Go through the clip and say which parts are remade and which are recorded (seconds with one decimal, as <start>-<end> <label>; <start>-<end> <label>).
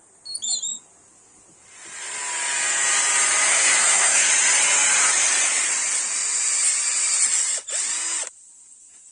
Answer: 0.0-3.5 recorded; 3.5-4.3 remade; 4.3-9.1 recorded